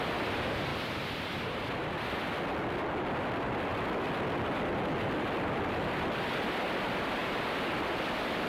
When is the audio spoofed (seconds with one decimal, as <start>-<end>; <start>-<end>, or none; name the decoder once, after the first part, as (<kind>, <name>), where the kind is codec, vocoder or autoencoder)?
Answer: none